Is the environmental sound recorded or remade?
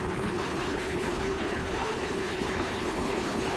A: remade